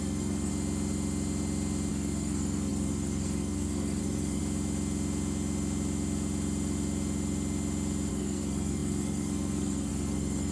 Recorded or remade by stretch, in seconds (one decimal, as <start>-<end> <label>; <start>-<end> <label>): 0.0-0.5 remade; 0.5-1.9 recorded; 1.9-4.4 remade; 4.4-8.1 recorded; 8.1-10.5 remade